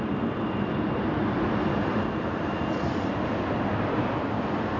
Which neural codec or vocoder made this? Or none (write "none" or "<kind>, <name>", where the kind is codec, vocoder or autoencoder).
vocoder, BigVGAN v2